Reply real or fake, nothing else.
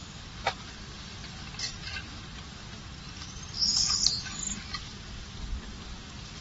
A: real